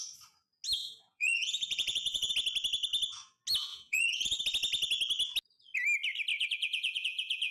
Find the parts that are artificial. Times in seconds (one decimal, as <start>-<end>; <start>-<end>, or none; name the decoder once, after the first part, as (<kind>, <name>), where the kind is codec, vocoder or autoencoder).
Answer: 0.8-2.3 (vocoder, Vocos); 3.7-4.4; 6.3-7.5